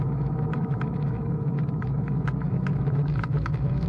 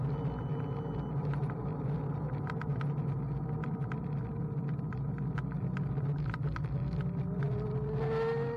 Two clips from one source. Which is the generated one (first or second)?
first